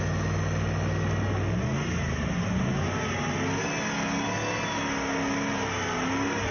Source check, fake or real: real